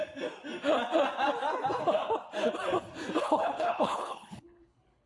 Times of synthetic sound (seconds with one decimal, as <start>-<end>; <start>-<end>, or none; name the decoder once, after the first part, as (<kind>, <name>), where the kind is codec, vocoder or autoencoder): 3.2-5.1 (codec, HILCodec)